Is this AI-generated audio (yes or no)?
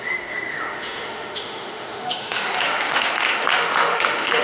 yes